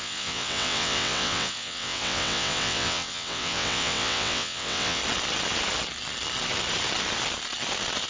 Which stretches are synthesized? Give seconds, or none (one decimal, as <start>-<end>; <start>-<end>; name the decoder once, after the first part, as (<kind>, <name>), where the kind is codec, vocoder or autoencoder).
0.0-5.0 (vocoder, WaveNeXt)